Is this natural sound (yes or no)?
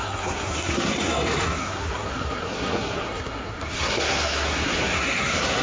no